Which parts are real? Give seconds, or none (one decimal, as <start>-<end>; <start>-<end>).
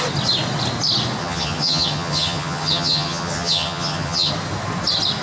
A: 0.0-1.2; 4.3-5.2